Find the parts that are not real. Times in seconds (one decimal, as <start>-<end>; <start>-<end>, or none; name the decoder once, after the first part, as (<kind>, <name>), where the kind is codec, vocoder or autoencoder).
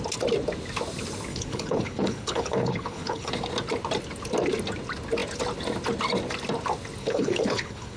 1.3-3.3 (codec, HILCodec); 7.0-8.0